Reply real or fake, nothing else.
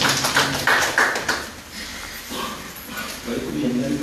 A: real